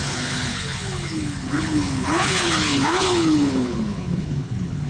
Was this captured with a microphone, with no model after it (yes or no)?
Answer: no